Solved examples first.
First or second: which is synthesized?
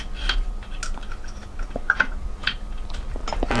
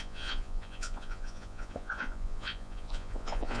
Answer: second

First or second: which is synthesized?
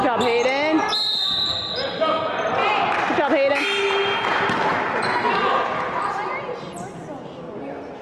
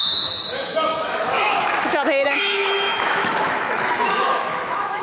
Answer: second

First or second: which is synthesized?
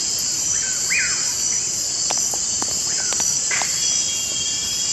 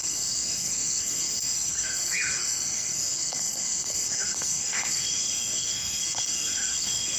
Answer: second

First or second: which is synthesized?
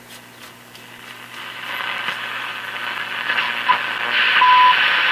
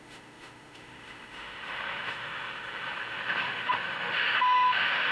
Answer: second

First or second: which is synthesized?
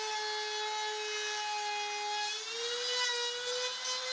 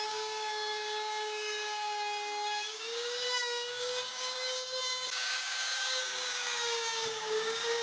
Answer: second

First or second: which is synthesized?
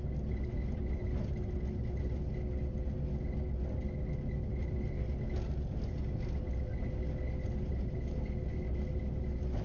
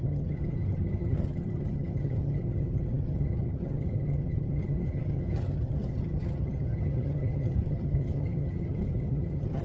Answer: second